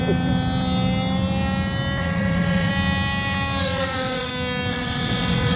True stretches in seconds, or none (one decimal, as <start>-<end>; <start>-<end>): 0.0-2.0; 2.7-3.6; 4.3-4.7